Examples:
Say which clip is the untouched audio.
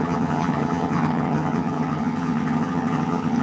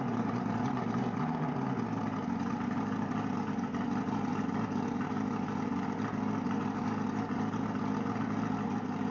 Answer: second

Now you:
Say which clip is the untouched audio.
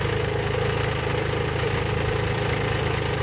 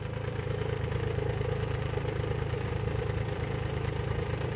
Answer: first